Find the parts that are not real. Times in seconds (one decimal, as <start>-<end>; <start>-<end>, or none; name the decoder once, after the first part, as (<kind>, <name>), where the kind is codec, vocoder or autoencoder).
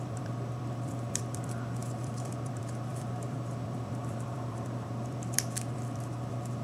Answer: 0.0-6.6 (vocoder, BigVGAN v2)